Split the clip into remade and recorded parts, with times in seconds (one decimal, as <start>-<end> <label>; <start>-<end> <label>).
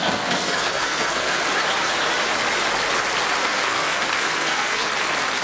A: 0.0-1.4 remade; 1.4-3.4 recorded; 3.4-4.9 remade; 4.9-5.4 recorded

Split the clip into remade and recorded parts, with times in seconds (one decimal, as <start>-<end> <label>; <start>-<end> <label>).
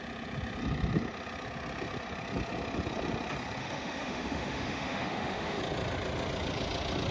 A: 0.0-3.6 recorded; 3.6-5.6 remade; 5.6-7.1 recorded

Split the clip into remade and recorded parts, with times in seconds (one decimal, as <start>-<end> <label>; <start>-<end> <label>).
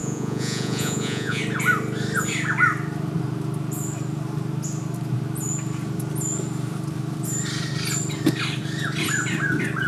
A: 0.0-1.4 remade; 1.4-9.9 recorded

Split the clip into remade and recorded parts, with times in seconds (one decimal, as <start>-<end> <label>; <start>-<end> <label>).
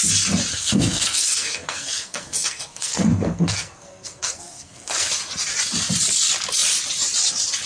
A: 0.0-0.5 recorded; 0.5-5.1 remade; 5.1-7.7 recorded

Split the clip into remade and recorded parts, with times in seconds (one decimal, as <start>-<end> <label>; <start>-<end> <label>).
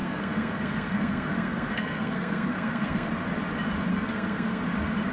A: 0.0-3.1 remade; 3.1-3.9 recorded; 3.9-4.6 remade; 4.6-5.1 recorded